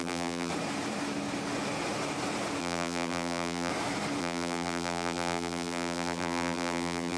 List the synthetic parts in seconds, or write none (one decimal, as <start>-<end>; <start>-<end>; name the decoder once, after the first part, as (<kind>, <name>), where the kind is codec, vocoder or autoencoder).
0.0-0.5 (vocoder, BigVGAN v2); 2.6-3.7; 4.2-7.2